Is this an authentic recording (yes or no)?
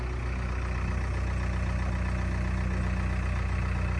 yes